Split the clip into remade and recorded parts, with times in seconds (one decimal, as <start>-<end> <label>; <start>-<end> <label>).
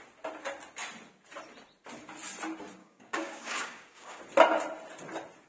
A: 0.0-2.8 recorded; 2.8-4.2 remade; 4.2-5.5 recorded